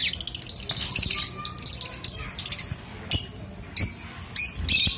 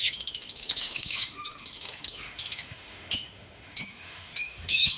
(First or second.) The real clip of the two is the first